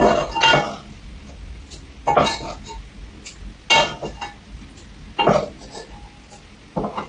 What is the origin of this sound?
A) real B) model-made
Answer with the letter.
A